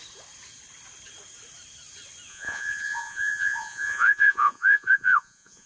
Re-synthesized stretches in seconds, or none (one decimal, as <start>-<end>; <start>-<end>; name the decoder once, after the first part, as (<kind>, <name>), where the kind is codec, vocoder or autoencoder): 2.3-5.7 (vocoder, Vocos)